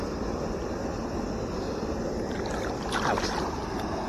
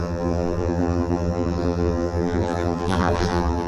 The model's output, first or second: second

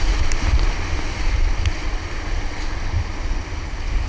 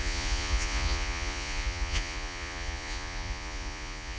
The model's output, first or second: second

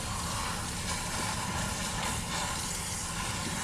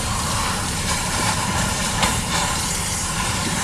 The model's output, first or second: second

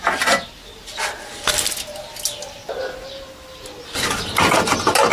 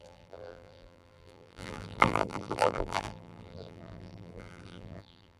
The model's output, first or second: second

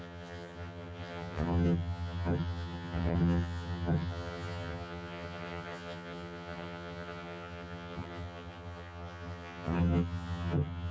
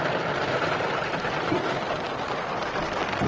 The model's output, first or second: first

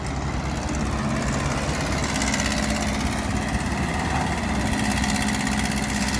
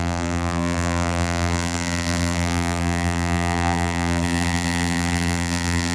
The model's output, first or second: second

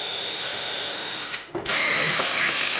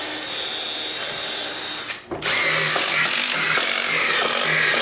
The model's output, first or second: first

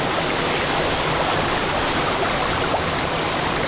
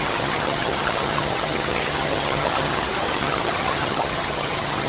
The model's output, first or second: second